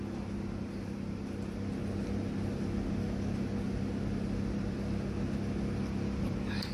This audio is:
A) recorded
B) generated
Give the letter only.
A